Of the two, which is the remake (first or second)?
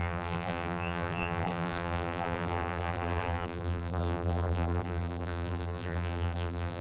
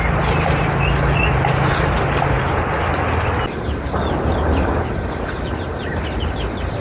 first